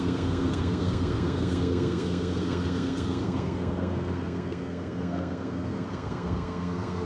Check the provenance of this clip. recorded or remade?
remade